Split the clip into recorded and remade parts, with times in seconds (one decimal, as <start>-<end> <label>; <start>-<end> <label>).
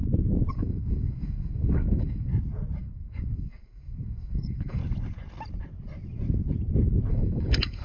0.0-0.5 recorded; 0.5-2.3 remade; 2.3-2.8 recorded; 2.8-4.8 remade; 4.8-7.1 recorded; 7.1-7.8 remade